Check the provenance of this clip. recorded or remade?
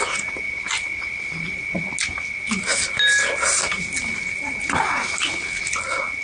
recorded